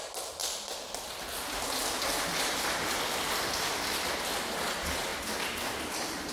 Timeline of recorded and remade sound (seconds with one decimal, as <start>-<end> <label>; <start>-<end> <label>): 0.0-6.3 recorded